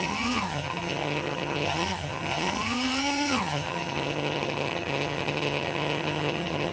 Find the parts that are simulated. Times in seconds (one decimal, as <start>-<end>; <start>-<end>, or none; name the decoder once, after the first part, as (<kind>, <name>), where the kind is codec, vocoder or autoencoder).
0.0-6.7 (vocoder, HiFi-GAN)